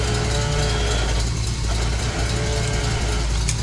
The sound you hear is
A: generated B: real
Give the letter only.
B